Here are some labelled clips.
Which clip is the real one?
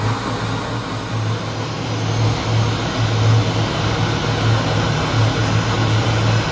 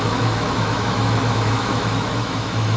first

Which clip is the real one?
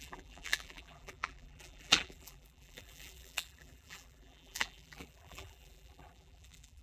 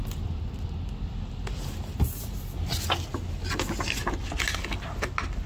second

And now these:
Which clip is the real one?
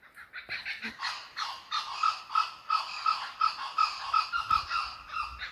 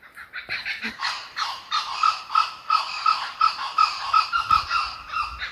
first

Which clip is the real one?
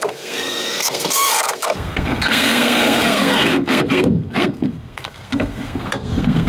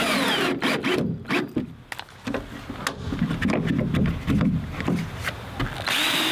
second